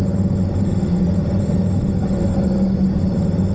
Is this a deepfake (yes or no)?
no